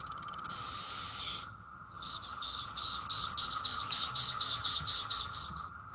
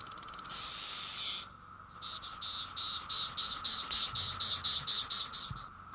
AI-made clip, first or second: first